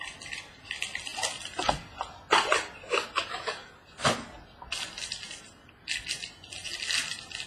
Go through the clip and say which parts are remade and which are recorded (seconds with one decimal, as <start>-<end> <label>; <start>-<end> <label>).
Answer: 0.0-7.5 recorded